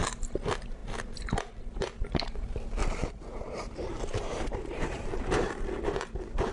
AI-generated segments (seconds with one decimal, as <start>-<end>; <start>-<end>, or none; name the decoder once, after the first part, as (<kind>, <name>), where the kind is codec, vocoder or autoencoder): 2.8-5.5 (vocoder, BigVGAN v2)